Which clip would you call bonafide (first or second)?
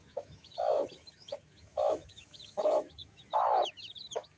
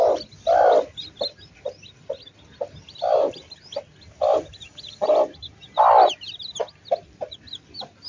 second